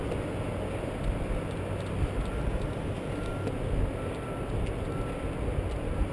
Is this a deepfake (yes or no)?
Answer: no